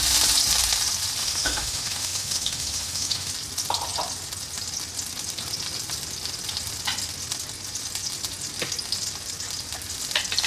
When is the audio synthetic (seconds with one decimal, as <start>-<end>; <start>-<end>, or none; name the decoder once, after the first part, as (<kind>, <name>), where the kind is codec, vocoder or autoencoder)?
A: 1.2-3.3 (autoencoder, DAC-VAE)